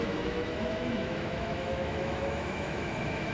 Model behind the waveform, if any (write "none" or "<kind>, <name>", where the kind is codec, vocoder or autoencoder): autoencoder, DAC-VAE